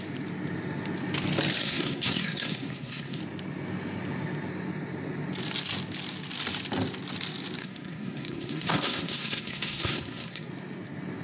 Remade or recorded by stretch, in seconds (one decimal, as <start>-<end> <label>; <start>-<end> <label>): 0.0-1.6 recorded; 1.6-3.2 remade; 3.2-7.6 recorded; 7.6-10.5 remade; 10.5-11.2 recorded